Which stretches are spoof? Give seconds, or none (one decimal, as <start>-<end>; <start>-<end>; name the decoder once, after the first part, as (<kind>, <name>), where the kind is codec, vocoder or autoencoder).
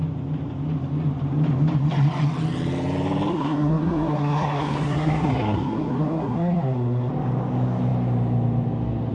3.3-7.1 (codec, SNAC)